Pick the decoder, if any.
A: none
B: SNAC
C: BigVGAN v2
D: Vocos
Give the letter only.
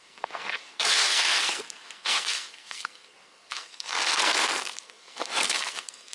B